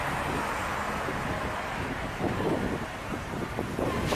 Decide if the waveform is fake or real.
real